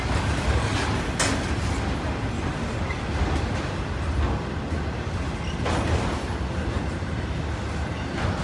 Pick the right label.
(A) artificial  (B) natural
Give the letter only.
B